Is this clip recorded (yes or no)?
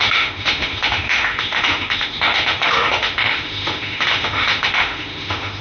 no